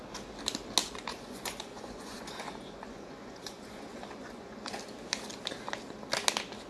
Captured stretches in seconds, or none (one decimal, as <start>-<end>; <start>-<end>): 0.0-0.8; 4.8-6.7